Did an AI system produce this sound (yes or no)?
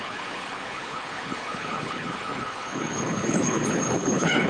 yes